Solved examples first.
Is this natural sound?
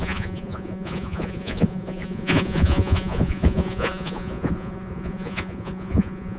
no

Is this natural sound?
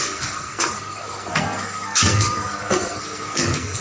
no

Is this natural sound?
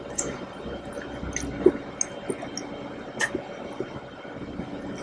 yes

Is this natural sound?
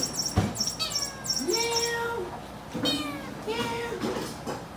yes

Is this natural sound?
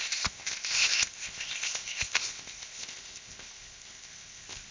no